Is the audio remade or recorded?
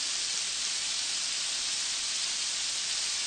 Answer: recorded